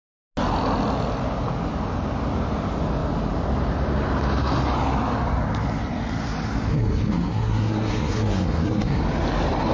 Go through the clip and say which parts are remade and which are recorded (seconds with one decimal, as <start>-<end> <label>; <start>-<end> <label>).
0.0-6.7 recorded; 6.7-9.0 remade; 9.0-9.7 recorded